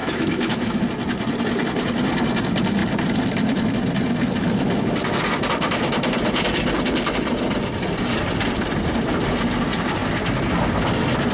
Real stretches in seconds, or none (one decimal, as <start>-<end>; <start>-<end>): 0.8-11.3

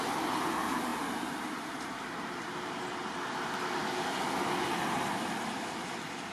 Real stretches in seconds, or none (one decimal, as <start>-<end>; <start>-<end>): 0.0-6.3

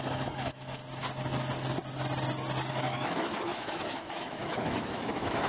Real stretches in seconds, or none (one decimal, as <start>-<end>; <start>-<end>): 0.8-2.7

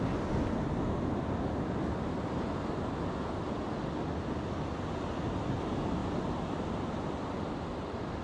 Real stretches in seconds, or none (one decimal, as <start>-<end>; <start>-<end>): 0.0-8.2